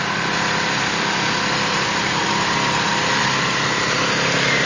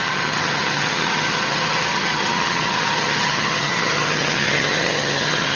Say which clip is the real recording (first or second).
first